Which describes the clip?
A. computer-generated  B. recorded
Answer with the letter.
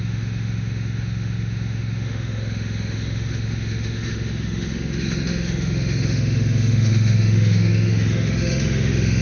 A